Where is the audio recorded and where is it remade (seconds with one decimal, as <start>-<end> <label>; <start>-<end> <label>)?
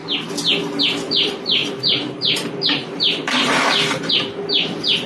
0.0-0.8 recorded; 0.8-5.1 remade